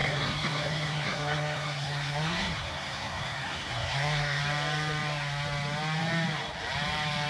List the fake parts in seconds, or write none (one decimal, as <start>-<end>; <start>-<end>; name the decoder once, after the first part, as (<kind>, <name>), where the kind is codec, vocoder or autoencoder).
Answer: 0.0-4.4 (codec, SNAC)